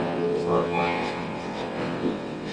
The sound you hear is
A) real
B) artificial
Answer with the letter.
B